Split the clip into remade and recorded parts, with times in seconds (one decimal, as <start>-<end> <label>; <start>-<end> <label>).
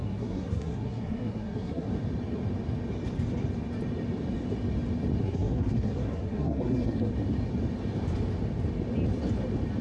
0.0-1.9 remade; 1.9-5.2 recorded; 5.2-7.1 remade; 7.1-9.8 recorded